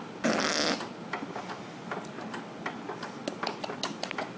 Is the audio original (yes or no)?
yes